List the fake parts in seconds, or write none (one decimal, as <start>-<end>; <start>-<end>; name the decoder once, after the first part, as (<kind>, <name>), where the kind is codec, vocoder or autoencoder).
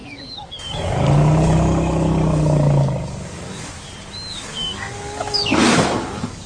0.0-3.9 (codec, DAC); 4.3-6.5